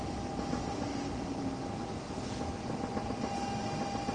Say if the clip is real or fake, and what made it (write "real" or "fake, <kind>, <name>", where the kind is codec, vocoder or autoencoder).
real